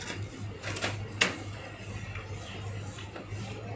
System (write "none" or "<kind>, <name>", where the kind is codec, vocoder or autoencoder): none